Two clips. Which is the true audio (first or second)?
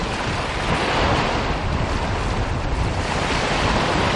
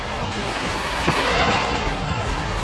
first